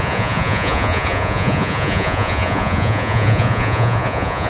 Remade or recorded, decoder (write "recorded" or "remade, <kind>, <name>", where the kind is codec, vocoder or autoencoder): remade, vocoder, Vocos